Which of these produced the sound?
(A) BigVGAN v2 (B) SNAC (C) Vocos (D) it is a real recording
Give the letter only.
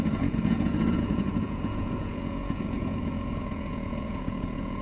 C